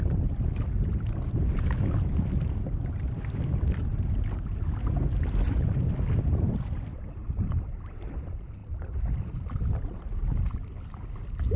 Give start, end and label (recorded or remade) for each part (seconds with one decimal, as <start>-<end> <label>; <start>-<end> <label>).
0.0-11.6 recorded